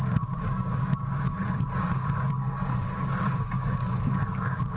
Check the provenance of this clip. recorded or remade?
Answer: remade